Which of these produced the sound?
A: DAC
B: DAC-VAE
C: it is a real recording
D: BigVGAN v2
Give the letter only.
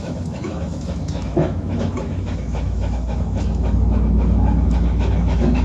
B